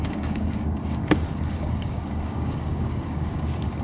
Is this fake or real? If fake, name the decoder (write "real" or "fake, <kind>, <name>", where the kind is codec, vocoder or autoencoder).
fake, codec, DAC